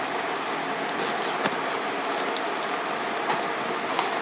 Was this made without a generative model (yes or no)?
yes